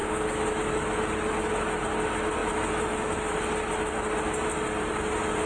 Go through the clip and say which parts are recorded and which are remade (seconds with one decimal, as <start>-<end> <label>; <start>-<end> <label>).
0.0-1.8 remade; 1.8-2.4 recorded; 2.4-3.5 remade; 3.5-5.5 recorded